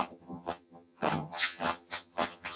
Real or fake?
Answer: fake